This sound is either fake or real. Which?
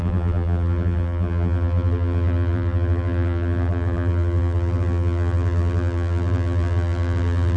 fake